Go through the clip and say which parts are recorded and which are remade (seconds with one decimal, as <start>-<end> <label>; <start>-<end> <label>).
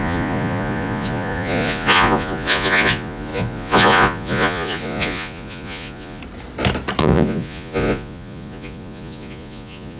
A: 0.0-6.2 remade; 6.2-7.0 recorded; 7.0-10.0 remade